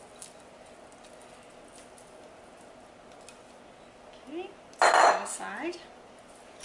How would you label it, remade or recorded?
recorded